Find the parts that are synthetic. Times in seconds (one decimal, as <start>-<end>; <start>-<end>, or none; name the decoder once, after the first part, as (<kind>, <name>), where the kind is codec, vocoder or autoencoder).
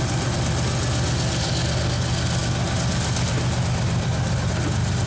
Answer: none